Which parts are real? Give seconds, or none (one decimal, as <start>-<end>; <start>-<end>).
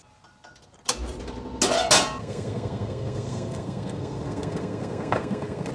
0.0-2.2